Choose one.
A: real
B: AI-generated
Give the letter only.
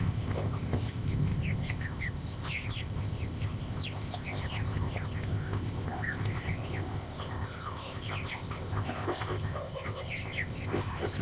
B